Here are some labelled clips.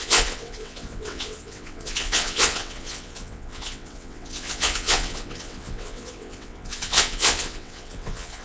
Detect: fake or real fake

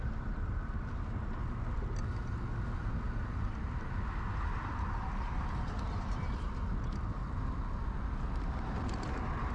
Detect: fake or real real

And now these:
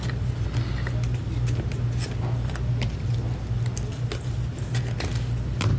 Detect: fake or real real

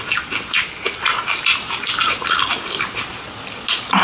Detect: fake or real real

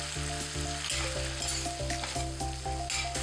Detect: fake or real real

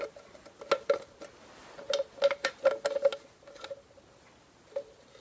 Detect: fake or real real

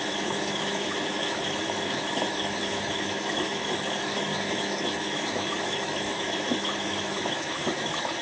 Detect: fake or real fake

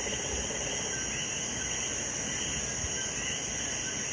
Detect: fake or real real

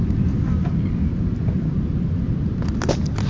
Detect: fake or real real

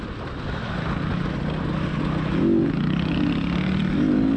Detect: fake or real real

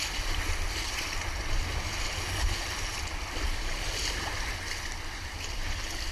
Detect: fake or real real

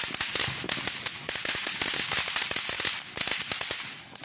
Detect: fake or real fake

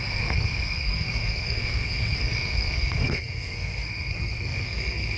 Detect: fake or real fake